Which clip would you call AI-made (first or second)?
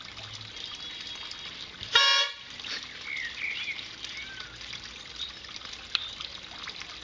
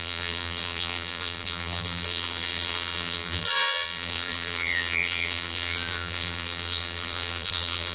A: second